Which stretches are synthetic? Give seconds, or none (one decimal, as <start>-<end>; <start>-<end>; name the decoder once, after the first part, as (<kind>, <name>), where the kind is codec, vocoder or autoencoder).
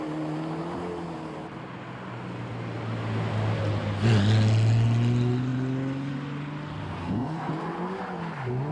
7.0-7.5 (codec, SNAC)